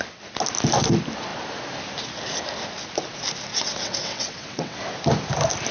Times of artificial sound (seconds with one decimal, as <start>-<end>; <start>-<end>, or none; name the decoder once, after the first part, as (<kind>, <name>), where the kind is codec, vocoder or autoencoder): 3.5-4.8 (vocoder, WaveNeXt)